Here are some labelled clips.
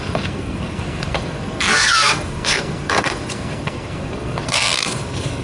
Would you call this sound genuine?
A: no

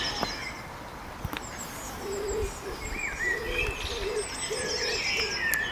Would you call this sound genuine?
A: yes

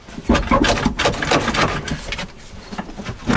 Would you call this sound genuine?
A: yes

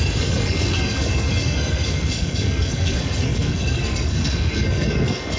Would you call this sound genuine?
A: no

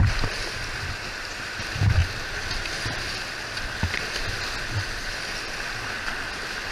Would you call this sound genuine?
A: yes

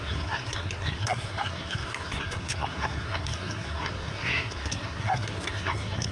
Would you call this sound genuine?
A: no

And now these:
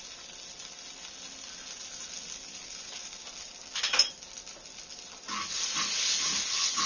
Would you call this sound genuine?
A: yes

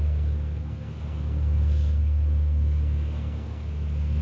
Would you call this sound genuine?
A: no